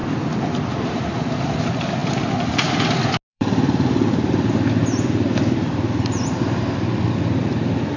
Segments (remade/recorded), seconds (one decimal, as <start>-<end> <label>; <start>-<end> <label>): 0.0-3.3 recorded; 3.3-4.3 remade; 4.3-4.8 recorded; 4.8-6.0 remade; 6.0-8.0 recorded

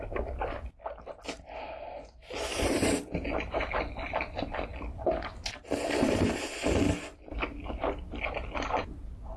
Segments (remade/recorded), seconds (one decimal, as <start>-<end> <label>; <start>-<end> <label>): 0.0-9.4 recorded

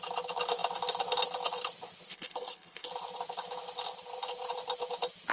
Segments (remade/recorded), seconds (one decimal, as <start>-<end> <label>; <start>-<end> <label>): 0.0-2.1 recorded; 2.1-2.9 remade; 2.9-5.3 recorded

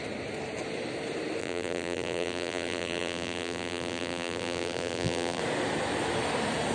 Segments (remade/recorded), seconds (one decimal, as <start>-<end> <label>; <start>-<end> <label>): 0.0-1.4 recorded; 1.4-5.4 remade; 5.4-6.7 recorded

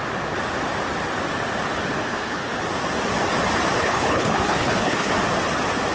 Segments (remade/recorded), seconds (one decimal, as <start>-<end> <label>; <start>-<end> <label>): 0.0-2.0 recorded; 2.0-2.6 remade; 2.6-3.8 recorded; 3.8-5.1 remade; 5.1-5.9 recorded

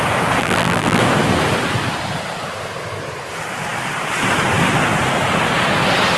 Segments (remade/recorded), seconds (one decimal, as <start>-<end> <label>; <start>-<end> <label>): 0.0-0.4 recorded; 0.4-1.0 remade; 1.0-6.2 recorded

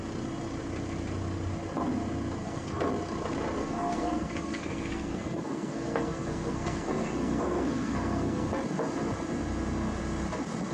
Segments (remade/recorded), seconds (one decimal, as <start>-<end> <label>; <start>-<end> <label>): 0.0-2.4 recorded; 2.4-2.9 remade; 2.9-3.6 recorded; 3.6-8.5 remade; 8.5-10.7 recorded

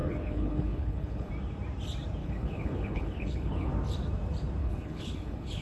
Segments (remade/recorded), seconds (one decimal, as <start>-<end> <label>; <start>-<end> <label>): 0.0-1.3 remade; 1.3-2.2 recorded; 2.2-3.7 remade; 3.7-4.6 recorded; 4.6-5.6 remade